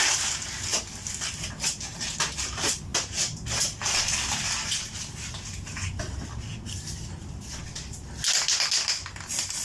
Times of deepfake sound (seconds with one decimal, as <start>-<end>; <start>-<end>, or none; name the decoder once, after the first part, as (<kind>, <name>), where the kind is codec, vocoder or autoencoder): none